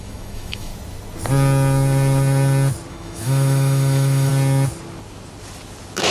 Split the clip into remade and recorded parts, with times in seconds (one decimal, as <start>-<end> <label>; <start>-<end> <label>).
0.0-0.7 remade; 0.7-2.9 recorded; 2.9-4.3 remade; 4.3-6.1 recorded